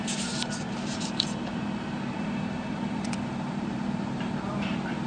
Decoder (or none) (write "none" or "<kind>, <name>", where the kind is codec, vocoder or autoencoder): vocoder, BigVGAN v2